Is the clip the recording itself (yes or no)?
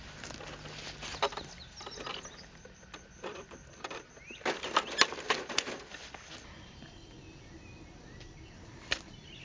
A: yes